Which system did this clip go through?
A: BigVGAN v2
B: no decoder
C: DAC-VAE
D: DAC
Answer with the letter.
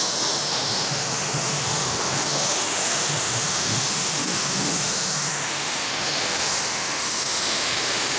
C